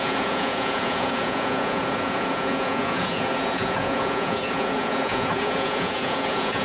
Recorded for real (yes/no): no